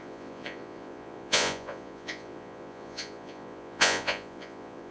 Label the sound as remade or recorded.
remade